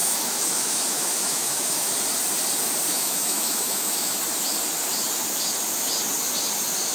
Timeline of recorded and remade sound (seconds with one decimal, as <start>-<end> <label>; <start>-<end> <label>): 0.0-1.9 remade; 1.9-2.9 recorded; 2.9-4.2 remade; 4.2-6.9 recorded